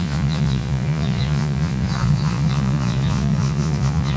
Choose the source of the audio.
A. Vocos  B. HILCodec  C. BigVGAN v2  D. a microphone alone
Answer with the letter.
A